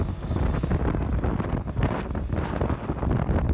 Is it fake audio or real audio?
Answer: real